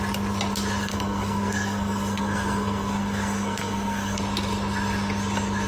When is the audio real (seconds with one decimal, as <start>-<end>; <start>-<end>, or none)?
0.0-0.8; 4.2-5.7